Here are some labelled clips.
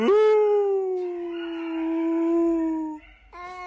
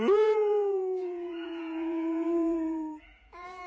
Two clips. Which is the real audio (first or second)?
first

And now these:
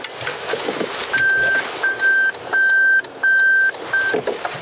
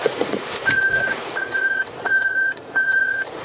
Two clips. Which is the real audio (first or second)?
first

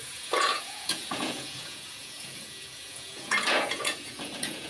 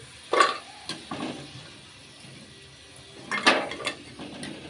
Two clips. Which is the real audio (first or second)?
second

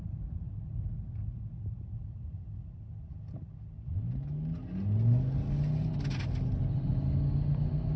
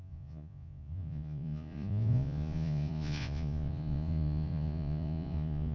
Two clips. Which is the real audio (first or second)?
first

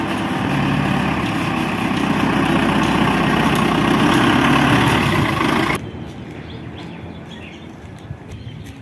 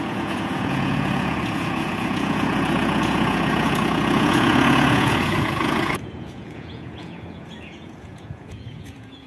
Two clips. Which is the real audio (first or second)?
first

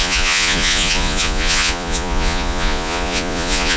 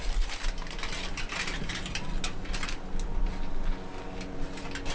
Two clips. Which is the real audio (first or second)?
second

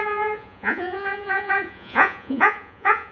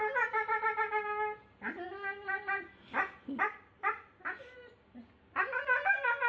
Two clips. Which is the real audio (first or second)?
second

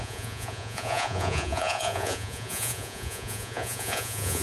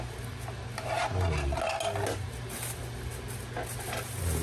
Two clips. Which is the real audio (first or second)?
second